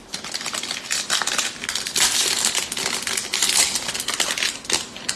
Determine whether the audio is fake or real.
real